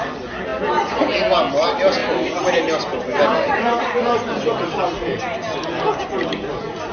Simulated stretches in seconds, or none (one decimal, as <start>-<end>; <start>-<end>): none